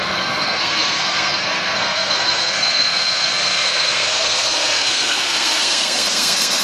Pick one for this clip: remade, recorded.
remade